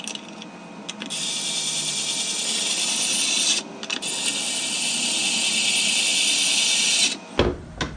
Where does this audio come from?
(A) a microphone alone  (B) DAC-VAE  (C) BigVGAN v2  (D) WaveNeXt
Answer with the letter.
A